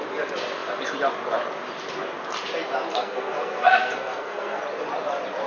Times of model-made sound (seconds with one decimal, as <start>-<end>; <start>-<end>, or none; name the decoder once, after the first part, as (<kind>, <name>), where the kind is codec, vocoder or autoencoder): 2.9-4.6 (codec, SNAC)